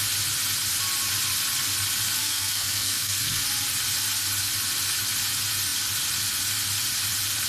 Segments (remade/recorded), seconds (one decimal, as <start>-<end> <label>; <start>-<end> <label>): 0.0-2.2 recorded; 2.2-3.4 remade; 3.4-7.5 recorded

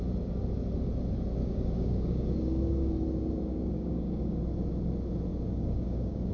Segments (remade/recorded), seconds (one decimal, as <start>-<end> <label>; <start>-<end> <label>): 0.0-1.4 recorded; 1.4-2.9 remade; 2.9-3.5 recorded; 3.5-4.4 remade; 4.4-5.3 recorded; 5.3-6.3 remade

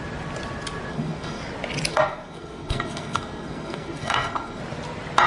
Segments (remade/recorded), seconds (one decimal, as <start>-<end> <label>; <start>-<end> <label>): 0.0-0.9 recorded; 0.9-1.4 remade; 1.4-1.9 recorded; 1.9-4.6 remade; 4.6-5.3 recorded

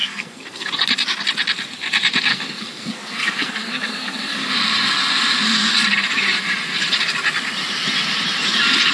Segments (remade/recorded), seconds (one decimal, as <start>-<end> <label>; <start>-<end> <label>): 0.0-0.7 remade; 0.7-2.3 recorded; 2.3-4.5 remade; 4.5-8.9 recorded

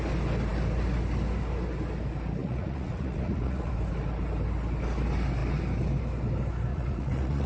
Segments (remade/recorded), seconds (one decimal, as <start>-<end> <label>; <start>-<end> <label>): 0.0-2.4 recorded; 2.4-3.7 remade; 3.7-6.7 recorded; 6.7-7.5 remade

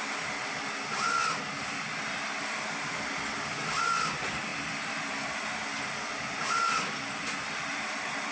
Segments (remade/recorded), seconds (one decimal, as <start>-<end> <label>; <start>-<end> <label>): 0.0-8.3 recorded

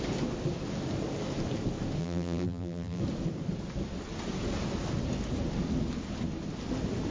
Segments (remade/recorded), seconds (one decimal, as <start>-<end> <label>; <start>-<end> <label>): 0.0-2.0 recorded; 2.0-3.0 remade; 3.0-7.1 recorded

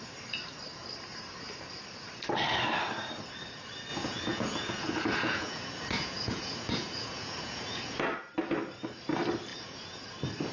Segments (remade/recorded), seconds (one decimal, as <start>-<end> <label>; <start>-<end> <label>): 0.0-3.9 recorded; 3.9-8.0 remade; 8.0-9.5 recorded; 9.5-10.0 remade; 10.0-10.5 recorded